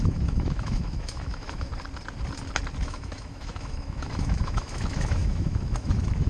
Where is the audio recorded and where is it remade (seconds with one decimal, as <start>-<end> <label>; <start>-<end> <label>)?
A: 0.0-1.7 remade; 1.7-2.8 recorded; 2.8-6.3 remade